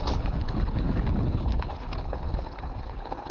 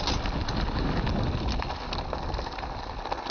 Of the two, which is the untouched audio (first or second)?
second